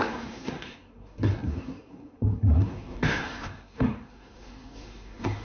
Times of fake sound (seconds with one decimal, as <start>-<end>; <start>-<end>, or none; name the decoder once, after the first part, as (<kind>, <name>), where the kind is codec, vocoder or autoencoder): 0.0-5.4 (codec, SNAC)